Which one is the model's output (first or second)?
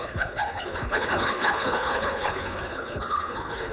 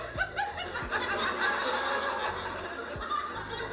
first